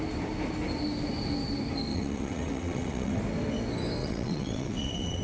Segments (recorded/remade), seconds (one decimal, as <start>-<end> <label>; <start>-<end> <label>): 0.0-1.9 recorded; 1.9-3.2 remade; 3.2-4.0 recorded; 4.0-5.2 remade